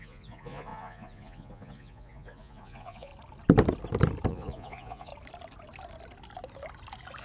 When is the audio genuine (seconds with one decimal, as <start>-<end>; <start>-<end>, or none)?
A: 3.1-4.3; 5.1-7.2